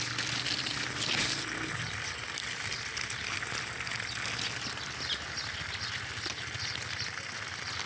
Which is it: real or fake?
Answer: real